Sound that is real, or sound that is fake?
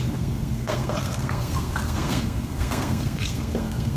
fake